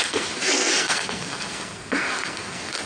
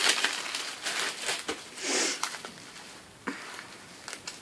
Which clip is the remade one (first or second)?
first